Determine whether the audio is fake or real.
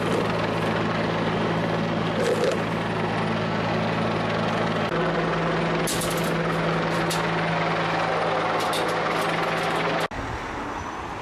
real